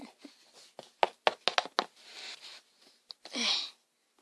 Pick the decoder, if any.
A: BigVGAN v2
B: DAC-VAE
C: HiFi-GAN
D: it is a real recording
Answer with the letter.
D